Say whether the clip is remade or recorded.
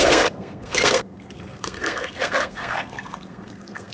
remade